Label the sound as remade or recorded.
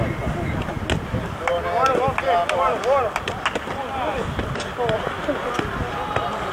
recorded